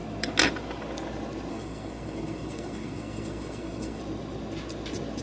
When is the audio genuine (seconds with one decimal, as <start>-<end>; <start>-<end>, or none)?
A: 0.0-1.5; 4.0-5.2